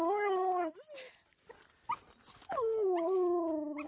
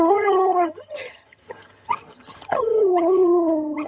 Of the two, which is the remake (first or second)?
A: second